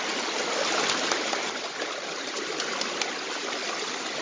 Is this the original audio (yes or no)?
yes